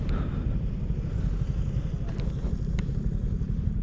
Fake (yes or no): no